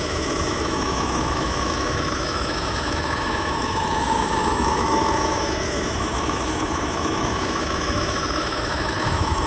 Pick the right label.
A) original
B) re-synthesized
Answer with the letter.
B